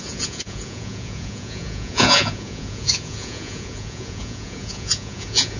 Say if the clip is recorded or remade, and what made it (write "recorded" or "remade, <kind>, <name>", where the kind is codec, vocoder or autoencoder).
remade, vocoder, Vocos